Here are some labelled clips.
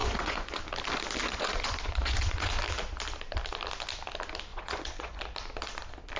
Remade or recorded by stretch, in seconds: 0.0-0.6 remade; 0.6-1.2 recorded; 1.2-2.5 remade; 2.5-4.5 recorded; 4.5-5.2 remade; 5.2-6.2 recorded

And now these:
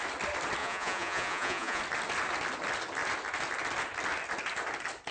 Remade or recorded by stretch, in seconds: 0.0-0.6 recorded; 0.6-1.8 remade; 1.8-5.1 recorded